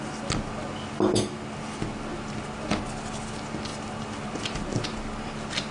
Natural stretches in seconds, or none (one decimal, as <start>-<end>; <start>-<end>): 0.0-5.7